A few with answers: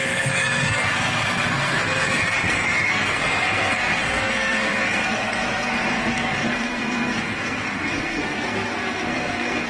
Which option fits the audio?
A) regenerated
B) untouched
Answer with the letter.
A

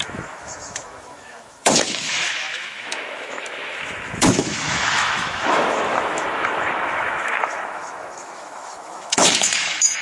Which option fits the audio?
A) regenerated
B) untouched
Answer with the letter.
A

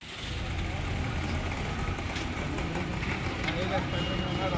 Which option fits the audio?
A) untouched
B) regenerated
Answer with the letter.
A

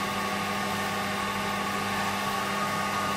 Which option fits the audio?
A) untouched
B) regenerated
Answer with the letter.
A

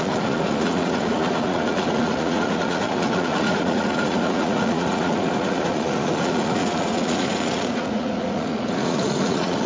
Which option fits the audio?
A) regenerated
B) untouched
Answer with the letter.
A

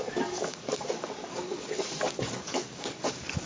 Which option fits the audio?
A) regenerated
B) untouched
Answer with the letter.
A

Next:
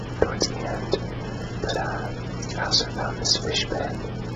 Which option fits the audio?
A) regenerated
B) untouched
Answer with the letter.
B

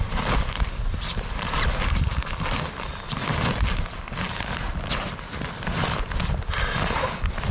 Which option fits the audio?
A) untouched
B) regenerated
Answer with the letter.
A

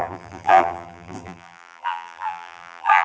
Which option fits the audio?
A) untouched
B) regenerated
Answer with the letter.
B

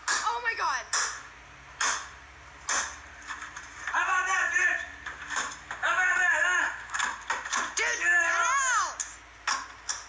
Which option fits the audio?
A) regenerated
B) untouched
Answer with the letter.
B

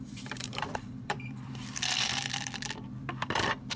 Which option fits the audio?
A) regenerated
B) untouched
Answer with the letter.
A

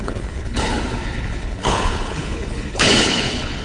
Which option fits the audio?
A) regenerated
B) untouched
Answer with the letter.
A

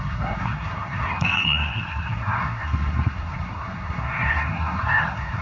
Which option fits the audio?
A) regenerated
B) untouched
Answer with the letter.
A